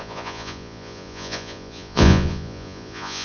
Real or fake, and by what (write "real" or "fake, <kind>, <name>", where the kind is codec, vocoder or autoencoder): fake, vocoder, Vocos